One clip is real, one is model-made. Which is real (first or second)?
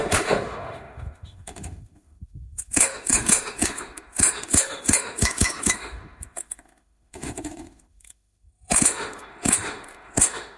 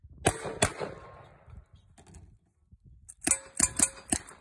second